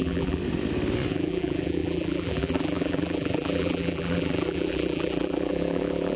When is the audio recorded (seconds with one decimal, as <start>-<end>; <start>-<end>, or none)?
0.4-1.1